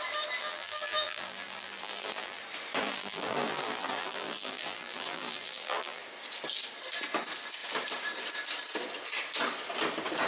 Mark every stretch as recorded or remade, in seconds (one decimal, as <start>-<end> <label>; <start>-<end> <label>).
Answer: 0.0-0.4 recorded; 0.4-2.4 remade; 2.4-2.8 recorded; 2.8-6.0 remade; 6.0-10.3 recorded